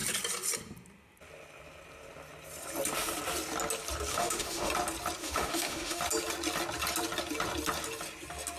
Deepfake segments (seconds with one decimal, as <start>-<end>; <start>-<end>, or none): 4.1-4.7; 5.2-6.0